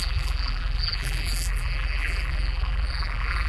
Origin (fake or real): fake